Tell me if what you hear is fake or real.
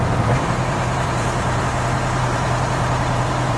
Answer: fake